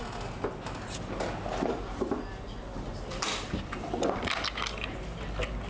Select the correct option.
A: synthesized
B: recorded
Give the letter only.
B